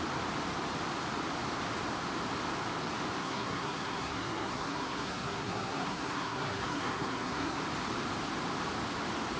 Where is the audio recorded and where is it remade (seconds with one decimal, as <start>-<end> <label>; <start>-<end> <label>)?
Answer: 0.0-3.2 recorded; 3.2-7.6 remade; 7.6-9.4 recorded